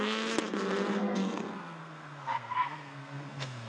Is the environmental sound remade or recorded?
remade